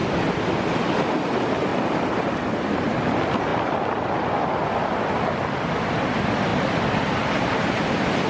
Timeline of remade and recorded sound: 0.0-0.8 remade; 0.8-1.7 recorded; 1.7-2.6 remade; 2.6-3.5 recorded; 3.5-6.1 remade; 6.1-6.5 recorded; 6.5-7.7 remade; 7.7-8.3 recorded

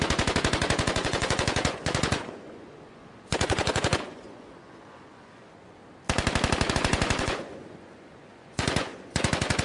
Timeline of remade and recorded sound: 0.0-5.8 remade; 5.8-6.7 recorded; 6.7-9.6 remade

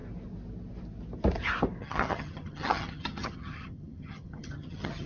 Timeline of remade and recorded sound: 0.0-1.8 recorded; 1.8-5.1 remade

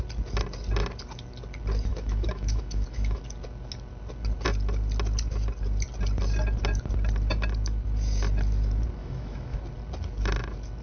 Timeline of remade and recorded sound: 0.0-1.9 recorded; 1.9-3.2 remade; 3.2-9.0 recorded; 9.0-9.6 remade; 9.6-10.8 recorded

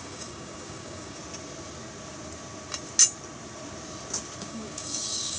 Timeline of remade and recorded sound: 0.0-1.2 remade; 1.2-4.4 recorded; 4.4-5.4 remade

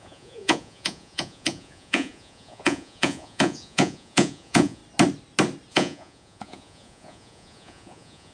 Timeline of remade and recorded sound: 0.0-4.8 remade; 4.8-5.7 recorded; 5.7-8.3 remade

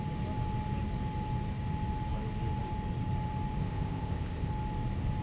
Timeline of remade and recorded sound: 0.0-3.6 recorded; 3.6-4.5 remade; 4.5-5.2 recorded

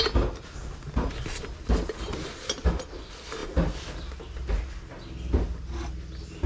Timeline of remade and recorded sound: 0.0-6.5 recorded